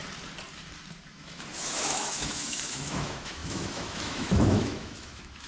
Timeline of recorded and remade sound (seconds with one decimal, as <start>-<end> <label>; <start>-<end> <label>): 0.0-1.1 recorded; 1.1-5.5 remade